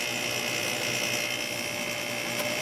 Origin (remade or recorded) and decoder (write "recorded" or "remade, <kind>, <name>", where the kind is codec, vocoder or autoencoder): recorded